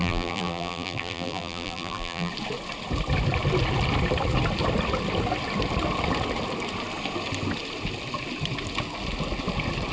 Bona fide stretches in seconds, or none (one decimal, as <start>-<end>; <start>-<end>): 2.3-9.9